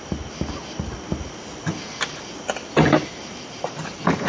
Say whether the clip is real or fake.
real